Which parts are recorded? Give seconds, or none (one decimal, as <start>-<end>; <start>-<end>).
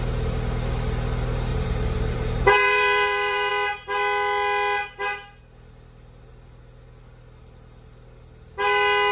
0.0-1.5; 3.5-9.1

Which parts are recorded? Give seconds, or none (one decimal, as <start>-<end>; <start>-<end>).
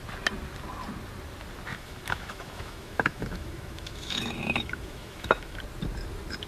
0.0-1.7; 5.6-6.5